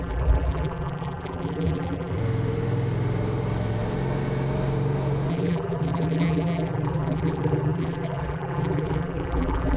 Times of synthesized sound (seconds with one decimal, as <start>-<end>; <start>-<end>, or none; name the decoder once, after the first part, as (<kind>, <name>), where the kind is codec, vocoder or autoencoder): 0.0-2.2 (vocoder, BigVGAN v2); 5.3-9.8